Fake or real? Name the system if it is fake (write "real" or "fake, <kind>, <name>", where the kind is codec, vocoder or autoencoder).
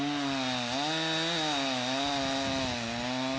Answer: real